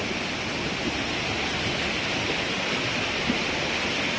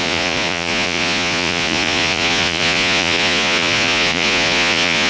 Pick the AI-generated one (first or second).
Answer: second